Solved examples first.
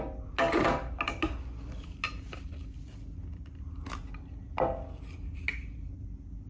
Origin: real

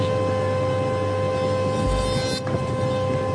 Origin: real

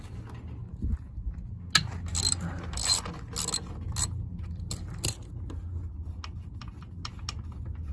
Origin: real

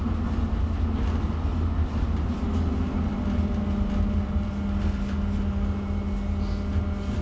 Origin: real